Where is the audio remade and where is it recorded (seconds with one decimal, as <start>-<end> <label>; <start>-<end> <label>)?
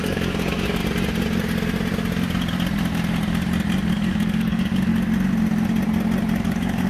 0.0-0.8 remade; 0.8-3.9 recorded; 3.9-4.9 remade; 4.9-6.4 recorded; 6.4-6.9 remade